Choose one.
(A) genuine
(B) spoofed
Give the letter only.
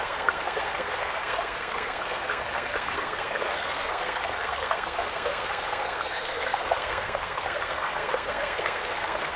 B